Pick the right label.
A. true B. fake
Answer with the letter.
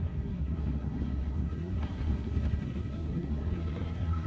B